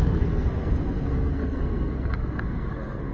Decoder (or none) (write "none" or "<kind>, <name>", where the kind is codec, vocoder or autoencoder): codec, SNAC